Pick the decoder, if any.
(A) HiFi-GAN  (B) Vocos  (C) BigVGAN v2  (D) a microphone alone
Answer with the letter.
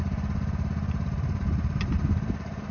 C